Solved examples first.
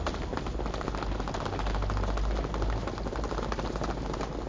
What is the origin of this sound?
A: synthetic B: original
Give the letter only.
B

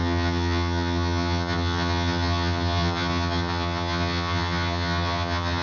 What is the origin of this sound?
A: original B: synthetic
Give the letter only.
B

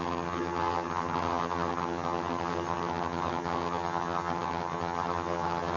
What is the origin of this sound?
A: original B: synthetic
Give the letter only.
B